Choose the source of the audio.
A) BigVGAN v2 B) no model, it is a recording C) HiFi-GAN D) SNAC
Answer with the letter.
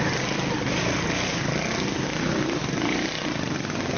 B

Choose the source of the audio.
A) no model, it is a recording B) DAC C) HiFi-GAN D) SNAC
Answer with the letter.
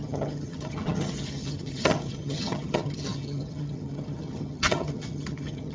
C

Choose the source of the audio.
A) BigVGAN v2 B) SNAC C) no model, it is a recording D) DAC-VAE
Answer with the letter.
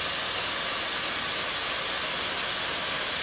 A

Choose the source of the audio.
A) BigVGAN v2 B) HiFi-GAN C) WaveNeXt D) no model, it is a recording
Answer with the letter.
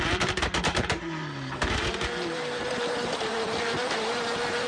A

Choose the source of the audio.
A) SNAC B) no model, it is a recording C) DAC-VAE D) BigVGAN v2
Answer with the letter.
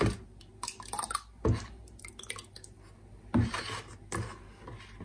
B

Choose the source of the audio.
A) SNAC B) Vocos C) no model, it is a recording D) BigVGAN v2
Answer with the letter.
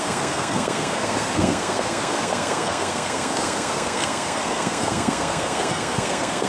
A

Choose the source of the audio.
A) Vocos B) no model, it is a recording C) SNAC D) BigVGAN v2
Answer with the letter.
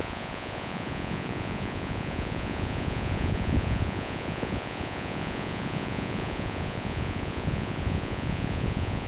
A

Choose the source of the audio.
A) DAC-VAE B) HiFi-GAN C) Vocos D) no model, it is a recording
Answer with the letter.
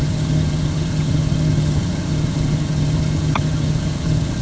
B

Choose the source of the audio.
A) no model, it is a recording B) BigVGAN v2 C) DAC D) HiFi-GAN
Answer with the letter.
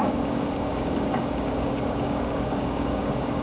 C